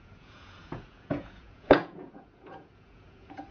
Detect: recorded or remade remade